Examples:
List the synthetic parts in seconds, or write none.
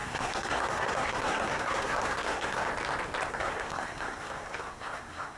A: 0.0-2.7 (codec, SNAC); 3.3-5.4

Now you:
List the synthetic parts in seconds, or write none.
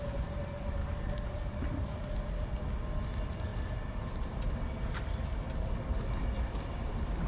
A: 0.8-2.2 (codec, DAC)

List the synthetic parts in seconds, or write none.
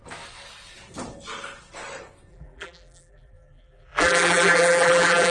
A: 2.3-5.3 (vocoder, BigVGAN v2)